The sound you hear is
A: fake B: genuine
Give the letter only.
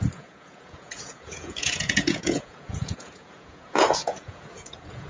A